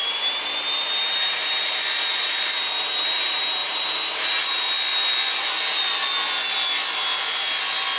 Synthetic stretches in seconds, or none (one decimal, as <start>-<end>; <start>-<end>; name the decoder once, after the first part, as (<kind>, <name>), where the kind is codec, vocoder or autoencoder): none